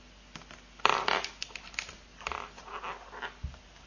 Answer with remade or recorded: recorded